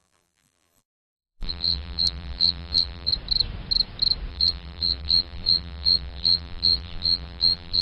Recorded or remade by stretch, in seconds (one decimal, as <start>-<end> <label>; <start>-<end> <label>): 0.0-3.1 remade; 3.1-4.3 recorded; 4.3-7.8 remade